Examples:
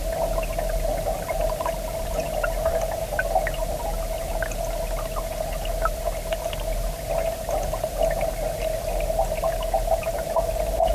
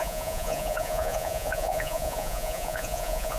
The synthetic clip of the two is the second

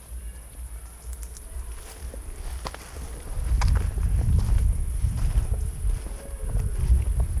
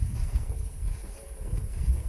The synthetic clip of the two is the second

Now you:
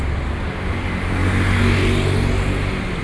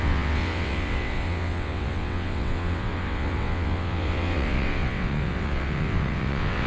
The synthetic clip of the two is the second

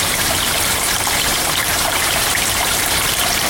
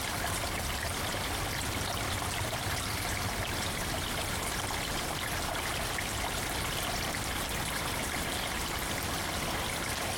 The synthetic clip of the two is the first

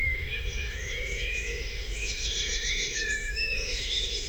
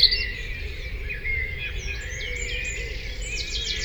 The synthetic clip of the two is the first